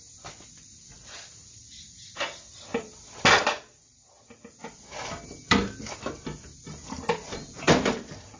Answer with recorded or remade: recorded